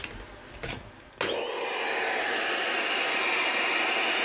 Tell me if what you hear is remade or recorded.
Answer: recorded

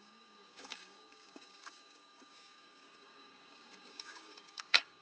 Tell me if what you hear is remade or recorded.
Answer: remade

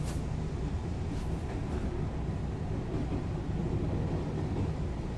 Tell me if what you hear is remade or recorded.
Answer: recorded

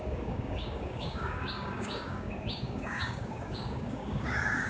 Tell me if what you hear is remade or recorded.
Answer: remade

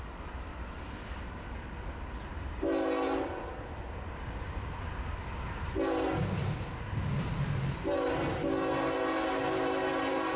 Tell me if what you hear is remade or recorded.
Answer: recorded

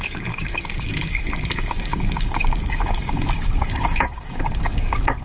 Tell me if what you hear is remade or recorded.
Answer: remade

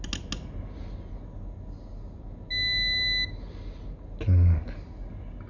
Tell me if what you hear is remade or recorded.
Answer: recorded